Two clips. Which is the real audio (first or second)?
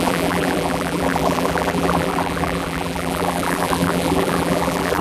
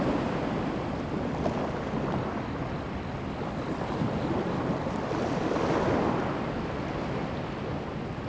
second